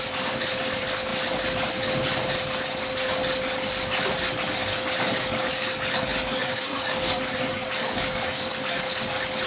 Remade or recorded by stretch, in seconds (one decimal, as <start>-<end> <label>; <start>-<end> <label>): 0.0-4.6 recorded; 4.6-8.8 remade; 8.8-9.5 recorded